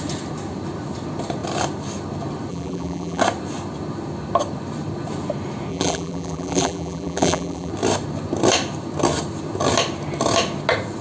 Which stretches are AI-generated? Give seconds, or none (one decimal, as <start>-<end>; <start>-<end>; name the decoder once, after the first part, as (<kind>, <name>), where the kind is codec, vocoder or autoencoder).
2.5-3.2 (vocoder, BigVGAN v2); 5.7-7.7